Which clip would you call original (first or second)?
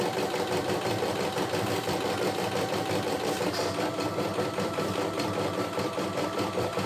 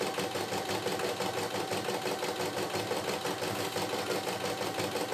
second